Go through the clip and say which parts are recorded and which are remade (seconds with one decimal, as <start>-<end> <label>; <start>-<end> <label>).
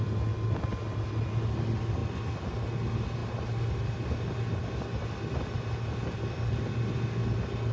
0.0-7.7 recorded